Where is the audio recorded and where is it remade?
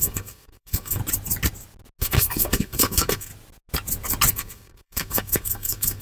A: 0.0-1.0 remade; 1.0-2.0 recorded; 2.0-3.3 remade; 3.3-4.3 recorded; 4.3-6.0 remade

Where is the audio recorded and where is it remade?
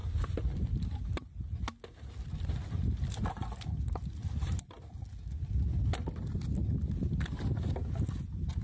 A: 0.0-8.6 recorded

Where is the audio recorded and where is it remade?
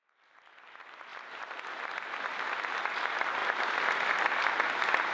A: 0.0-5.1 recorded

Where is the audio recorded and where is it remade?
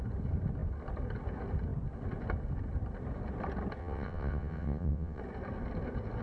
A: 0.0-3.8 recorded; 3.8-5.2 remade; 5.2-6.2 recorded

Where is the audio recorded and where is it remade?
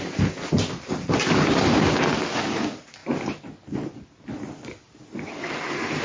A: 0.0-6.0 recorded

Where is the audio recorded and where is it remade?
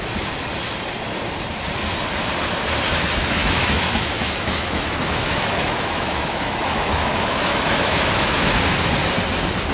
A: 0.0-3.4 recorded; 3.4-8.6 remade; 8.6-9.7 recorded